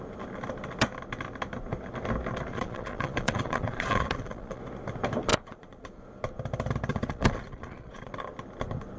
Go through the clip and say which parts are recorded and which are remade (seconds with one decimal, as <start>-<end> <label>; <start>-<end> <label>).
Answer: 0.0-2.5 recorded; 2.5-4.6 remade; 4.6-5.3 recorded; 5.3-6.0 remade; 6.0-6.9 recorded; 6.9-8.1 remade; 8.1-9.0 recorded